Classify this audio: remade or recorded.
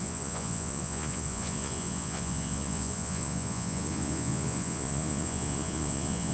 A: remade